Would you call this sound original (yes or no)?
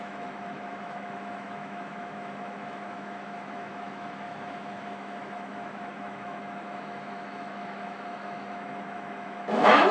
no